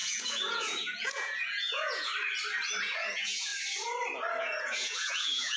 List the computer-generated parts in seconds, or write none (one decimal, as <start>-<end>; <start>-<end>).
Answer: 0.0-2.1; 2.8-3.5; 4.4-5.6